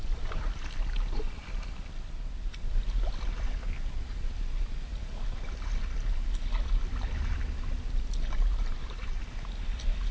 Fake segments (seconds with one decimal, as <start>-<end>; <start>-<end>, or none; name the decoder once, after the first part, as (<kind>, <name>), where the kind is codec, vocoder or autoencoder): 8.5-9.2 (vocoder, BigVGAN v2)